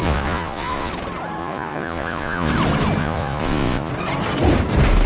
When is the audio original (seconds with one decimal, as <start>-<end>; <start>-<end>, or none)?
0.9-1.4; 2.5-3.0; 3.9-5.1